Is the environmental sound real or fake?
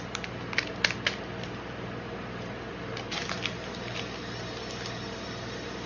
real